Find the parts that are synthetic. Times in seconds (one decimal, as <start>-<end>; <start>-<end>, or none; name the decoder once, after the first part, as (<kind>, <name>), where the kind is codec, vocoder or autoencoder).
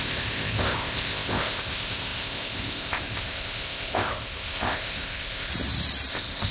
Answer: 0.0-5.5 (codec, ZipCodec); 6.1-6.5